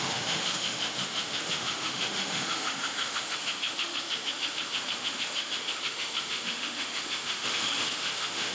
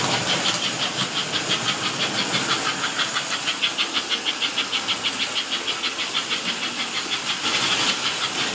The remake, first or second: first